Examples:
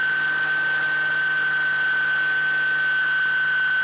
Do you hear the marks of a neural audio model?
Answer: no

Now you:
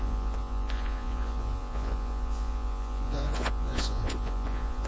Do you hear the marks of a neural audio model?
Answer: yes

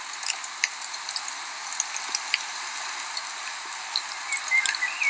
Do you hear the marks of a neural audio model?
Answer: no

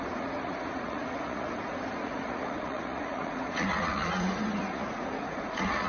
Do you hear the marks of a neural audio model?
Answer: yes